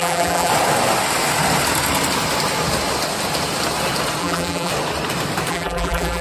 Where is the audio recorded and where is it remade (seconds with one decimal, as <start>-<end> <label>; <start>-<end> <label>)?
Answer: 0.0-0.5 remade; 0.5-4.2 recorded; 4.2-4.7 remade; 4.7-5.5 recorded; 5.5-6.2 remade